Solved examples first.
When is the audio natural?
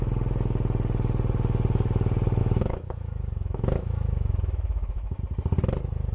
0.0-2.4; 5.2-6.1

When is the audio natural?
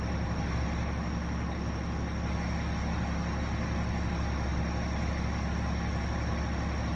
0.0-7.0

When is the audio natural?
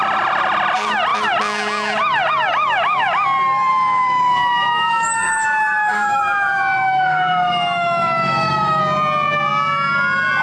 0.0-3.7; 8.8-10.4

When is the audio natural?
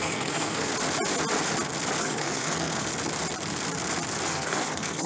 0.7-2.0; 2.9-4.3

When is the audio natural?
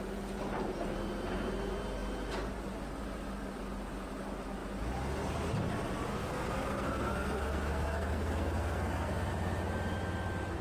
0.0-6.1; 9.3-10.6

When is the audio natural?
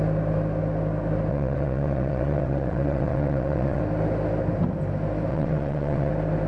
0.0-1.3; 3.8-5.3; 6.1-6.5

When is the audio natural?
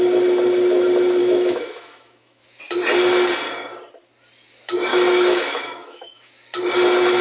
0.0-1.2; 2.4-4.9; 6.3-7.2